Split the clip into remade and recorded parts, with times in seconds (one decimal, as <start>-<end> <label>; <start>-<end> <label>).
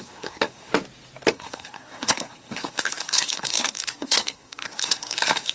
0.0-0.7 remade; 0.7-1.3 recorded; 1.3-5.5 remade